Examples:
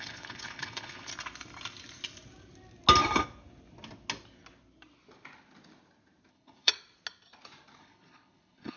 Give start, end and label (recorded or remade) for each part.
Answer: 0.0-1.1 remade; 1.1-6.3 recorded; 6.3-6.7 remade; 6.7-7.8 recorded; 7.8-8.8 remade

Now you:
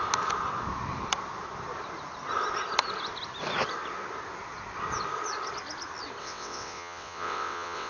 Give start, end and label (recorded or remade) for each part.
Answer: 0.0-6.2 recorded; 6.2-7.9 remade

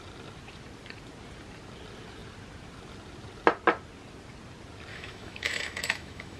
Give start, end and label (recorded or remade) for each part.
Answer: 0.0-4.9 recorded; 4.9-6.4 remade

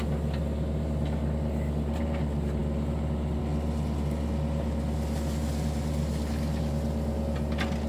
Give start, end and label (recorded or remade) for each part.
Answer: 0.0-7.9 recorded

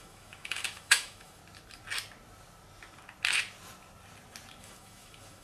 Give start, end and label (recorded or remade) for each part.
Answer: 0.0-1.4 remade; 1.4-4.6 recorded; 4.6-5.4 remade

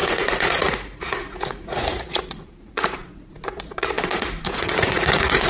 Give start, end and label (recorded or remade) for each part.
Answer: 0.0-5.5 remade